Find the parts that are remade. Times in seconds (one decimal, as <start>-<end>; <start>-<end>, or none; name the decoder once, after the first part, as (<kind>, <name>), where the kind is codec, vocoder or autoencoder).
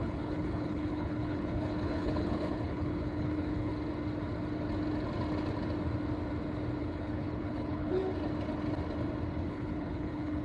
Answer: 0.0-3.7 (codec, HILCodec); 6.8-8.0; 9.5-10.4